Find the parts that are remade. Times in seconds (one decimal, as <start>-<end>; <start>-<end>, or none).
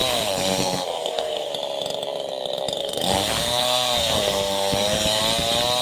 0.0-1.5; 2.8-5.2